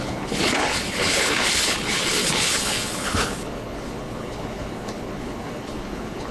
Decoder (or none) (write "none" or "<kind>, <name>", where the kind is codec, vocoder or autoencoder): codec, HILCodec